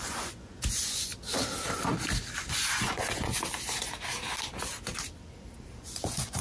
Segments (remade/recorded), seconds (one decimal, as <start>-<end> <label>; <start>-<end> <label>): 0.0-1.1 remade; 1.1-2.4 recorded; 2.4-3.3 remade; 3.3-5.8 recorded; 5.8-6.4 remade